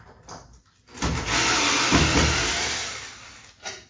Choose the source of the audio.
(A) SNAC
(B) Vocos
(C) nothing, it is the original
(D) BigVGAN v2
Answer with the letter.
C